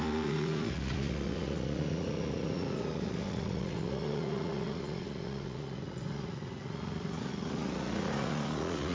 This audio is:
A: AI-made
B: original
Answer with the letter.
A